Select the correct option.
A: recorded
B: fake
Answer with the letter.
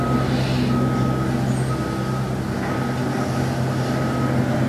A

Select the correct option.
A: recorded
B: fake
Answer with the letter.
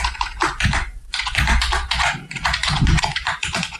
B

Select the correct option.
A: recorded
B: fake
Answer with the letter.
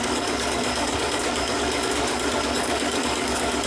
B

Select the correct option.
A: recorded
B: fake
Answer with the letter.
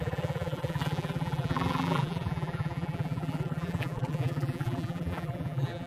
B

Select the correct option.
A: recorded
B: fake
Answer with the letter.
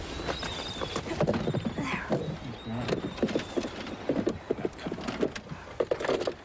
A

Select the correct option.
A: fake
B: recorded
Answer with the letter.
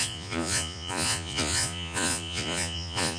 A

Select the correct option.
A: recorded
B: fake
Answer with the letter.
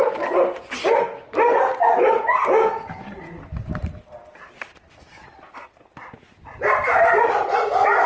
A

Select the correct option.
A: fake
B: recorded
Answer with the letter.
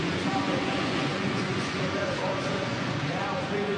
A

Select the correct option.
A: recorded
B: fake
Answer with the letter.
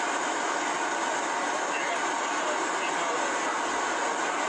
A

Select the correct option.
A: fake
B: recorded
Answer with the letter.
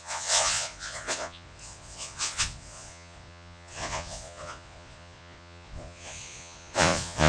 A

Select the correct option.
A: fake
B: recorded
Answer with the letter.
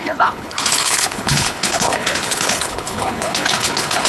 A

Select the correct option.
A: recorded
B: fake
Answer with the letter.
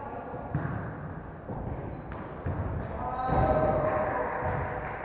A